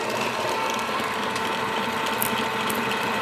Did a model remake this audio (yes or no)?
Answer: no